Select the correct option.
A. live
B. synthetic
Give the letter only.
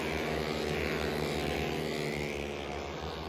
A